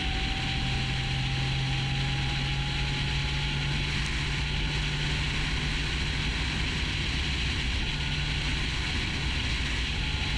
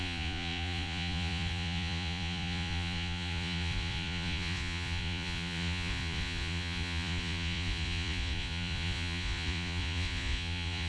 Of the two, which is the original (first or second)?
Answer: first